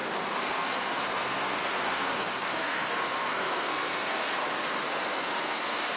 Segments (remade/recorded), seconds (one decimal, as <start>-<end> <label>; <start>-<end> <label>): 0.0-0.5 recorded; 0.5-4.4 remade; 4.4-4.9 recorded; 4.9-6.0 remade